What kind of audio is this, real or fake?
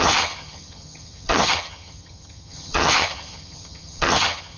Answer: fake